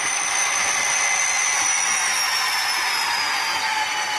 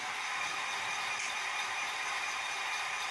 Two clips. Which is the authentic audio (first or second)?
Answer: first